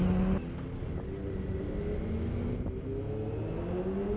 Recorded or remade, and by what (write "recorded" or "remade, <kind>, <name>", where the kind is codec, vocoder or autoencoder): recorded